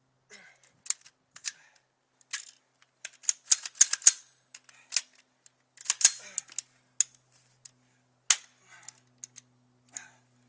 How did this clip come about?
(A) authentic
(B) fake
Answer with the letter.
A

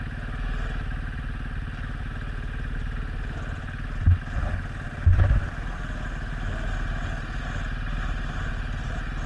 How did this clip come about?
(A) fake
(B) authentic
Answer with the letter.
B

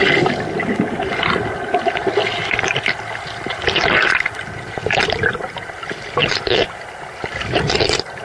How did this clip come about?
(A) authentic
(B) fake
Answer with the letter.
A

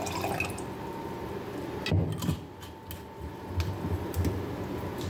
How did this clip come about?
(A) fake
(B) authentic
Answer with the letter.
B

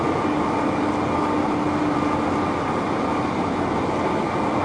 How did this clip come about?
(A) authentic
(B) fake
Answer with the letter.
A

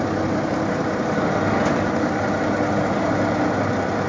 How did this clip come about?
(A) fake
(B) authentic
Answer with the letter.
B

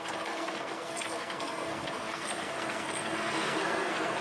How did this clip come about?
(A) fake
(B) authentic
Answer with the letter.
A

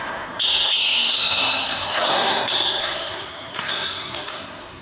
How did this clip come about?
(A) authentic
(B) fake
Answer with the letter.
B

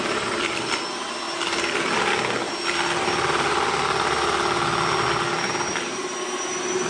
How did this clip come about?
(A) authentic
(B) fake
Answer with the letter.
A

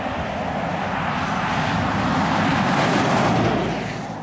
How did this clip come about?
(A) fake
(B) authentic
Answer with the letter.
B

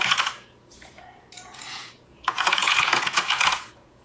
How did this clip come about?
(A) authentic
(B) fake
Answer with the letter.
B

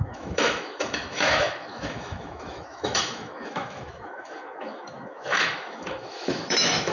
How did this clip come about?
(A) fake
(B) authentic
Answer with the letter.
A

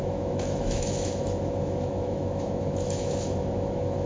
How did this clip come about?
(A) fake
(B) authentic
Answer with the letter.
A